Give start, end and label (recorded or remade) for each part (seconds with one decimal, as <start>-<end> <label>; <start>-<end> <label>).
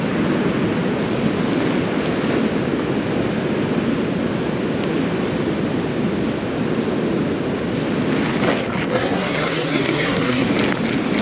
0.0-8.9 recorded; 8.9-10.5 remade; 10.5-11.2 recorded